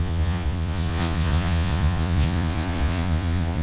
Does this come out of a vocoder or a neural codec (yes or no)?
yes